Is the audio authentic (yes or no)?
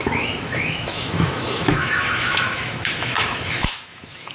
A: no